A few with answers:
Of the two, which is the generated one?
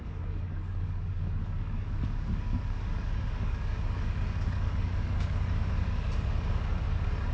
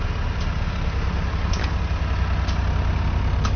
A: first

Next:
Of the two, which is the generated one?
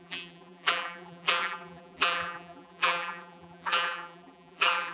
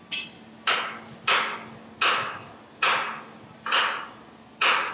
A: first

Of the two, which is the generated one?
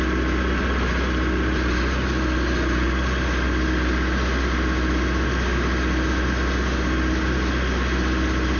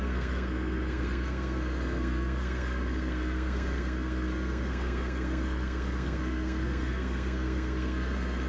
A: second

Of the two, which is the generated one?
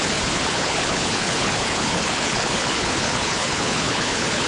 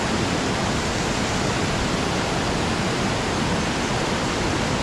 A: first